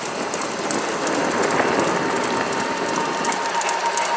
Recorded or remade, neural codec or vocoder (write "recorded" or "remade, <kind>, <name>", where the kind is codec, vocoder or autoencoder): recorded